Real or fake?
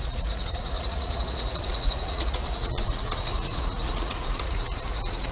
fake